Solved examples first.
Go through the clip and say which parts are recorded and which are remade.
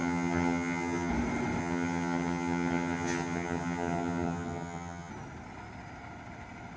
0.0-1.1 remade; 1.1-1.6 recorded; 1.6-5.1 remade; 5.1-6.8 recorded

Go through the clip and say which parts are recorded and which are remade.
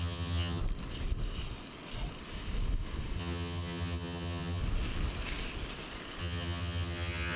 0.0-0.6 remade; 0.6-3.2 recorded; 3.2-4.6 remade; 4.6-6.2 recorded; 6.2-7.4 remade